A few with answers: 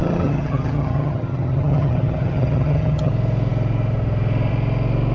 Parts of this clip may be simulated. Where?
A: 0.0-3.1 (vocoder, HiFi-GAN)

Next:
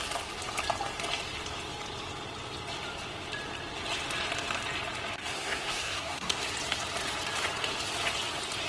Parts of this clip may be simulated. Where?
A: 5.2-6.5 (codec, SNAC)

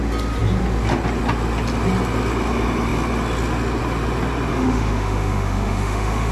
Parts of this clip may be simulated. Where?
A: 4.5-6.3 (autoencoder, DAC-VAE)

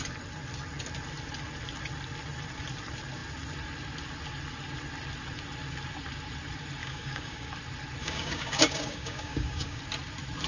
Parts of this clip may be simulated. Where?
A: 6.8-7.5 (codec, DAC); 8.0-9.8

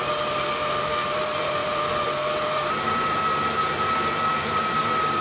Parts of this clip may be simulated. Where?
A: 0.0-5.2 (vocoder, BigVGAN v2)

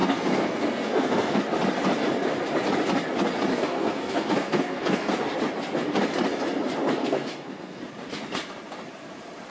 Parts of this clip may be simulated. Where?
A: 0.0-1.4 (codec, SNAC); 3.5-5.1; 7.0-7.8

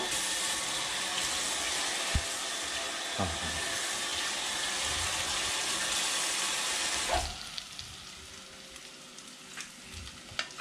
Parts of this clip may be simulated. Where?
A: none